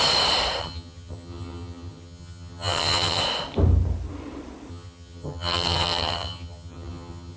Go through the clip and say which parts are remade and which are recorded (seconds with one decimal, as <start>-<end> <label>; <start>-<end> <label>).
0.0-0.6 recorded; 0.6-3.2 remade; 3.2-4.7 recorded; 4.7-7.4 remade